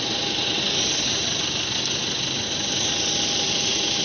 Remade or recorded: recorded